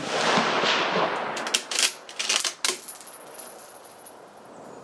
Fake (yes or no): no